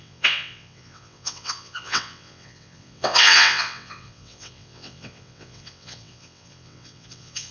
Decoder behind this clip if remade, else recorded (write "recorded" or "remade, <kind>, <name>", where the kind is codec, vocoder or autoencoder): remade, vocoder, WaveNeXt